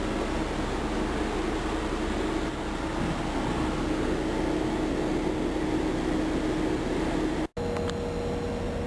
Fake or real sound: real